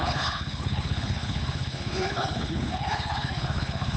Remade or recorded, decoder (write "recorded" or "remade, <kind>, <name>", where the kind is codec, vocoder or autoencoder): remade, codec, HILCodec